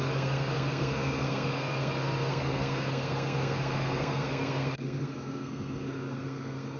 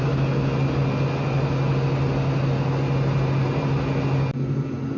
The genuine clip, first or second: second